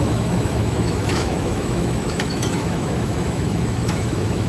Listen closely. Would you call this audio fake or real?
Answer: fake